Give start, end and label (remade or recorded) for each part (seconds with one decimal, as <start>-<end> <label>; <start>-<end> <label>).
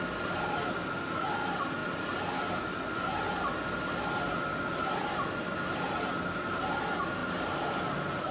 0.0-8.3 recorded